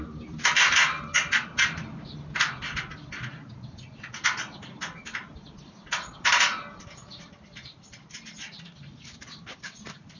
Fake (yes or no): no